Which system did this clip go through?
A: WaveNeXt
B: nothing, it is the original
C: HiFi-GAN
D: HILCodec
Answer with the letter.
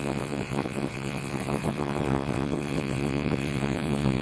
A